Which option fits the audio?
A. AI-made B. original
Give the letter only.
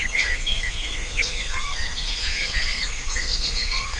A